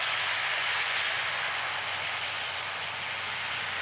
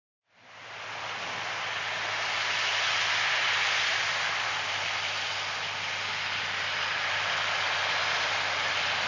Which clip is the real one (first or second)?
second